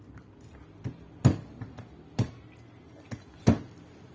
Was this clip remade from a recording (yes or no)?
no